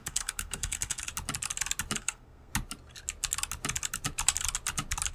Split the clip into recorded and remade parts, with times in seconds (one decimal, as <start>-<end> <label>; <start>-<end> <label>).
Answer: 0.0-1.1 remade; 1.1-2.0 recorded; 2.0-2.5 remade; 2.5-5.1 recorded